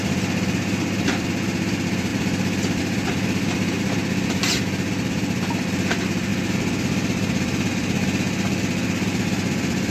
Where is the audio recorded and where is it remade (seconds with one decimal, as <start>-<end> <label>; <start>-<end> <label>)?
0.0-9.9 recorded